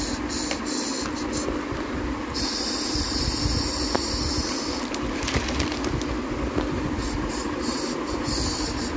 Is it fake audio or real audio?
real